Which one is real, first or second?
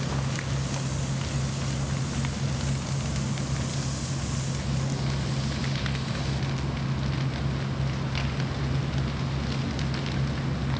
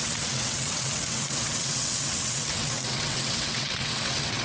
first